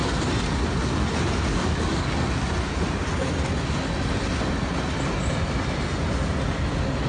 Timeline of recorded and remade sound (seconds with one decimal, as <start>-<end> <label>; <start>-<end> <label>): 0.0-1.5 recorded; 1.5-2.2 remade; 2.2-7.1 recorded